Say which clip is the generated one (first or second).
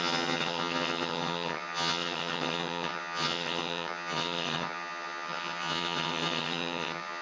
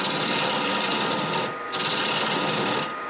first